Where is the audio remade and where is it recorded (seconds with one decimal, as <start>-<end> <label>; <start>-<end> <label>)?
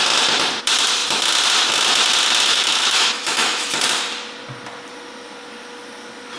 0.0-2.5 recorded; 2.5-3.7 remade; 3.7-6.4 recorded